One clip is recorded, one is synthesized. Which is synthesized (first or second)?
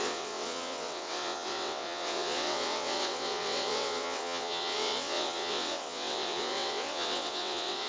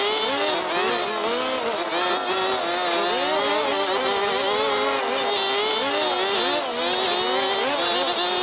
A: first